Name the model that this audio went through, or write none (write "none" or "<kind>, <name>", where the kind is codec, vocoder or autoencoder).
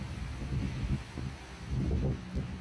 none